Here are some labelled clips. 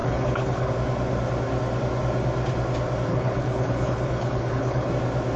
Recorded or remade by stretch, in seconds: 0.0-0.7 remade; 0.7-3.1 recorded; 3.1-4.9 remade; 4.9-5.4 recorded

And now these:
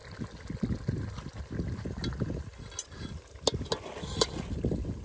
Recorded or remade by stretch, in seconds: 0.0-5.0 recorded

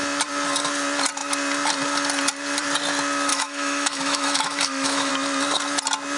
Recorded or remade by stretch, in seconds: 0.0-3.3 recorded; 3.3-5.1 remade; 5.1-6.2 recorded

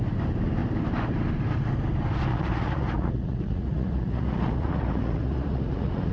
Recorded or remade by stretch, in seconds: 0.0-2.3 recorded; 2.3-6.1 remade

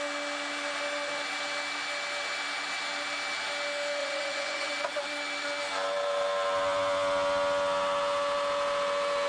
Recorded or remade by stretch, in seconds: 0.0-4.0 recorded; 4.0-4.7 remade; 4.7-9.3 recorded